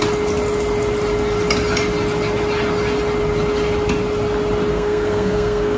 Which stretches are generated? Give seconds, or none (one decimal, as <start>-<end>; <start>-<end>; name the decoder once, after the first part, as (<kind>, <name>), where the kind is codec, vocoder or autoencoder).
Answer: 4.7-5.8 (codec, SNAC)